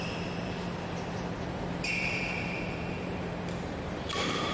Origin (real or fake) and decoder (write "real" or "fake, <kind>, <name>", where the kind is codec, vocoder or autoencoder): fake, vocoder, BigVGAN v2